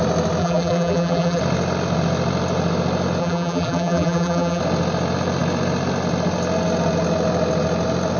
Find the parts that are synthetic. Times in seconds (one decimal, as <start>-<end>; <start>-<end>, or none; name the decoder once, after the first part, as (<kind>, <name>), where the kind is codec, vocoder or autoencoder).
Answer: 0.4-1.4 (vocoder, BigVGAN v2); 3.2-4.6